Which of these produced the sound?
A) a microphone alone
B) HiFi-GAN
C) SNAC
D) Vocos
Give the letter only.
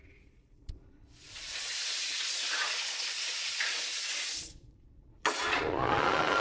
D